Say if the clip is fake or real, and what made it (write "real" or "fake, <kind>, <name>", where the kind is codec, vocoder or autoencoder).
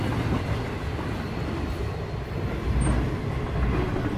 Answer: real